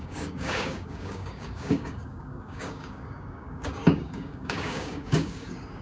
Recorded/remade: remade